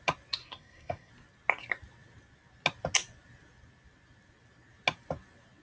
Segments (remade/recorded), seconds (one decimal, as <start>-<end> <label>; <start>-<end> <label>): 0.0-0.4 recorded; 0.4-1.1 remade; 1.1-5.6 recorded